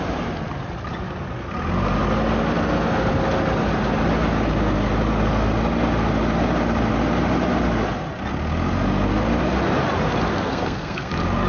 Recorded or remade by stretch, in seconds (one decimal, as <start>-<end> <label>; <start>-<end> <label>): 0.0-10.3 recorded; 10.3-11.1 remade; 11.1-11.5 recorded